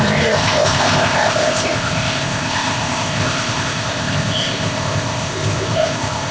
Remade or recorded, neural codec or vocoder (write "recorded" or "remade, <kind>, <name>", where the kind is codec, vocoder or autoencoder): remade, codec, ZipCodec